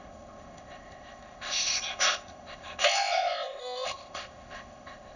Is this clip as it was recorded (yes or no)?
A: no